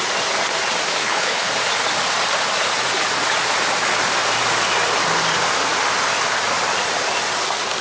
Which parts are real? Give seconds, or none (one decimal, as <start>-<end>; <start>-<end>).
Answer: 0.0-0.9; 1.5-7.8